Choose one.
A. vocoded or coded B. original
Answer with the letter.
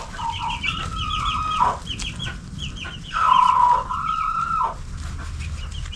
B